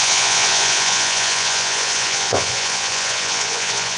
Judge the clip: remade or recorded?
remade